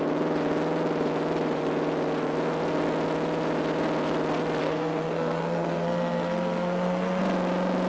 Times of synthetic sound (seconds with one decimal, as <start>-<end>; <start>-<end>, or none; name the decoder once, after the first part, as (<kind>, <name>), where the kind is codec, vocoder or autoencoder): 4.6-7.2 (codec, SNAC)